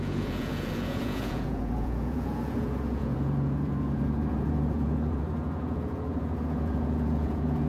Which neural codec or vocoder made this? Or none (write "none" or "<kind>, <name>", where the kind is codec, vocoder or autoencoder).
vocoder, Vocos